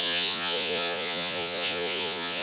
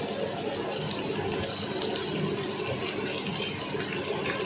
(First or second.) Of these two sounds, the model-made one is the first